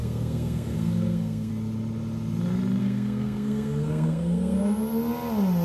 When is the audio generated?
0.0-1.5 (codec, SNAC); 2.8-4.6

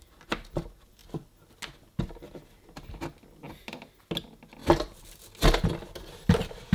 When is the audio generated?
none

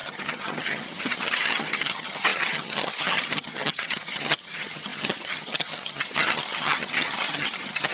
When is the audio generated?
0.0-7.9 (vocoder, HiFi-GAN)

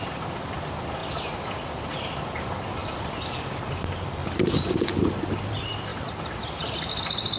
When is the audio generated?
0.0-1.0 (vocoder, BigVGAN v2); 1.7-4.2; 5.5-7.4

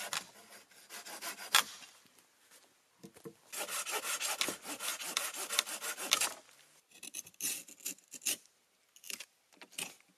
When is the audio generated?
none

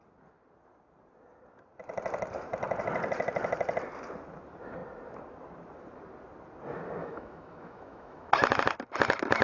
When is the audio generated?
7.0-8.3 (autoencoder, DAC-VAE)

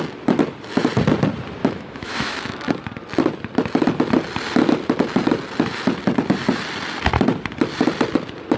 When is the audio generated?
1.6-2.7 (autoencoder, DAC-VAE)

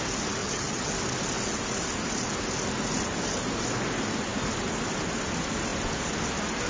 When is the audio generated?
0.4-0.9 (vocoder, HiFi-GAN)